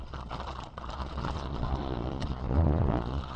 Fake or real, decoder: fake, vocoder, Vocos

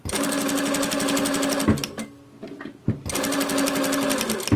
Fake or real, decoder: real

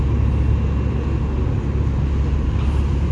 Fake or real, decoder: real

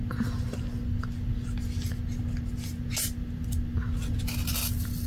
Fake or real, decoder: real